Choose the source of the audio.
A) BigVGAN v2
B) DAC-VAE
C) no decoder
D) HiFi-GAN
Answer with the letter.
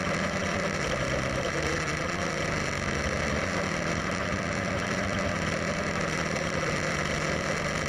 A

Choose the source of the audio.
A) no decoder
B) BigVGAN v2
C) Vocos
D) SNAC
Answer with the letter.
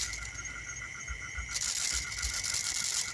A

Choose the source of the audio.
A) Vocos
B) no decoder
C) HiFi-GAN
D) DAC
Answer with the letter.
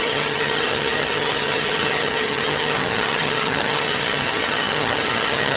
C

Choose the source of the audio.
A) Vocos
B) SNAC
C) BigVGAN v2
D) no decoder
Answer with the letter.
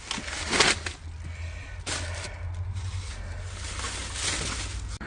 D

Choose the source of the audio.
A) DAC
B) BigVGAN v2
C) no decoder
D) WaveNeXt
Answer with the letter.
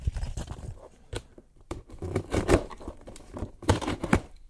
B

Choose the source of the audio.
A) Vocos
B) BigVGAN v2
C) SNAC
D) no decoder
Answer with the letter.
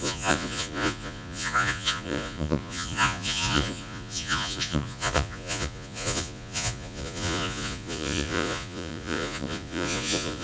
A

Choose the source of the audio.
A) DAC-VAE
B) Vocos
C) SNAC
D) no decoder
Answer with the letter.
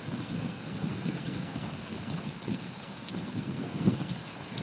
C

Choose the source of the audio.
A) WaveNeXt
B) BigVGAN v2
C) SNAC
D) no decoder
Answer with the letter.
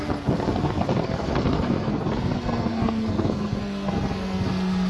C